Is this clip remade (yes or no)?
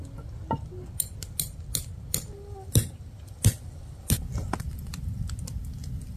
no